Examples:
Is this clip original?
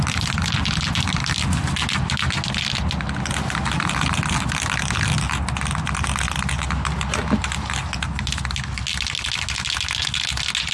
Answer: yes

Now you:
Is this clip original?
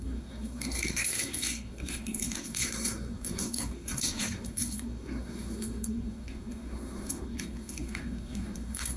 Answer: no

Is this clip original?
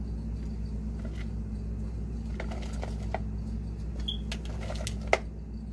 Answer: yes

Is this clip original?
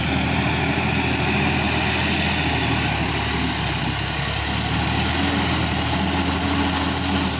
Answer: yes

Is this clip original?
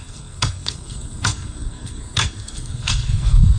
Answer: no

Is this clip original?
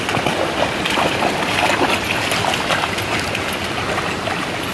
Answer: yes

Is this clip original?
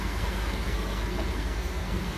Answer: no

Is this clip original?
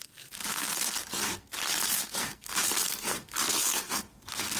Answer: no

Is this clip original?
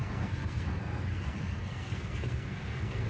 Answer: no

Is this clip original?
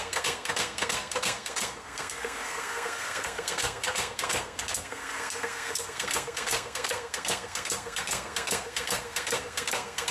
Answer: no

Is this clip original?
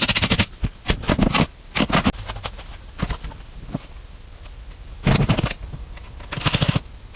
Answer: yes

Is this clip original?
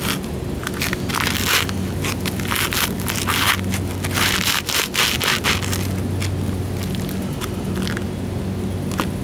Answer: yes